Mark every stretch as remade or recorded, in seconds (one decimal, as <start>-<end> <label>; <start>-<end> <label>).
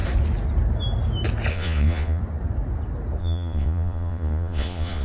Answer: 0.0-1.5 recorded; 1.5-2.2 remade; 2.2-3.2 recorded; 3.2-5.0 remade